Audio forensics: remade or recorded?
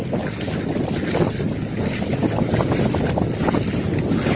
recorded